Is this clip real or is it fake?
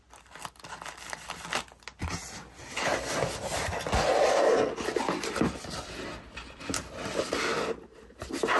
real